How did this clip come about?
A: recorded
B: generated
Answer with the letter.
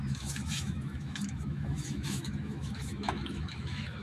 B